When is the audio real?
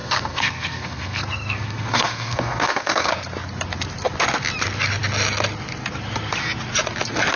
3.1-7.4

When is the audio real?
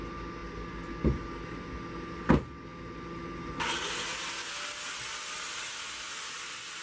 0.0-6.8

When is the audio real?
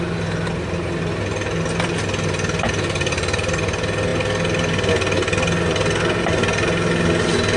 0.0-7.6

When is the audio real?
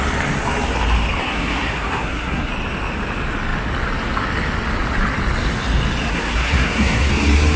0.0-1.2; 2.5-6.1; 7.1-7.6